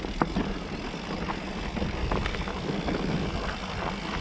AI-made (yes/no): no